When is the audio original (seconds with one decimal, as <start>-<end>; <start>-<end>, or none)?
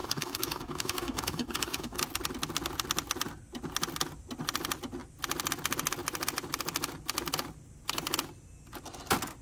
2.0-9.4